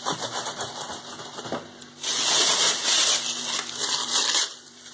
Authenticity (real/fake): real